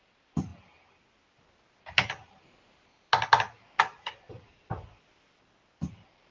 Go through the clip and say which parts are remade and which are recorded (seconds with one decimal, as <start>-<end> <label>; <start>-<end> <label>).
0.0-0.5 remade; 0.5-4.3 recorded; 4.3-6.3 remade